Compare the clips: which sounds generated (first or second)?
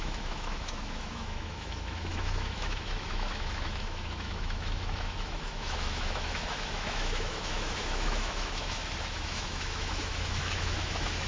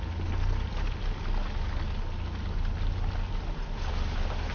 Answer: first